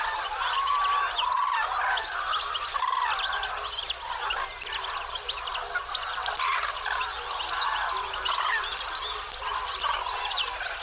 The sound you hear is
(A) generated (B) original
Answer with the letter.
B